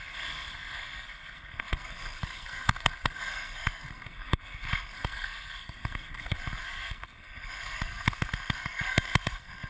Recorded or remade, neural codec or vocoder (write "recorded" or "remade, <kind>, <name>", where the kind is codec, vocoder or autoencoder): remade, codec, SNAC